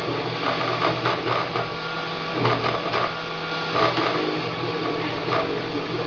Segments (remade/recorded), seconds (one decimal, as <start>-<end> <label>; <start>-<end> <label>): 0.0-6.1 recorded